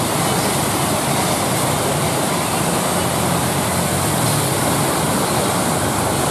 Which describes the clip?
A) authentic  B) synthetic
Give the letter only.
A